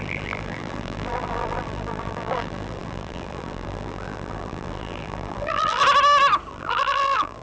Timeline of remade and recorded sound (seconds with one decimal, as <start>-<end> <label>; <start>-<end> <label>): 0.0-5.8 remade; 5.8-6.5 recorded; 6.5-7.4 remade